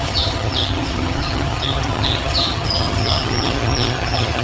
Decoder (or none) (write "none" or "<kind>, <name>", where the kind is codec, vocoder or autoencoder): vocoder, HiFi-GAN